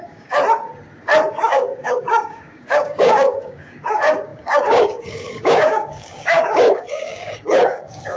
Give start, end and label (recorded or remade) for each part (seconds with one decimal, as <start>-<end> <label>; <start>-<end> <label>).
0.0-0.4 remade; 0.4-1.3 recorded; 1.3-8.2 remade